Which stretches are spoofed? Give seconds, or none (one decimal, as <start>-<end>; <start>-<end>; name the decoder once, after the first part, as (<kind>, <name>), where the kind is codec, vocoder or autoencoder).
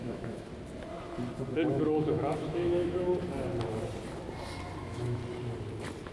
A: 0.0-0.5 (autoencoder, DAC-VAE); 1.5-3.1; 4.8-5.2